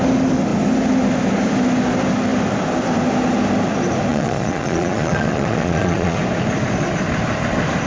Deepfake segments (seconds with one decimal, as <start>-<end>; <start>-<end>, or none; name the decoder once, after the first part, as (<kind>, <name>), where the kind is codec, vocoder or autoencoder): 4.1-6.2 (vocoder, Vocos)